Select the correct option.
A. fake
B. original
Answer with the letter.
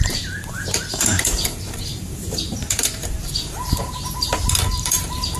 A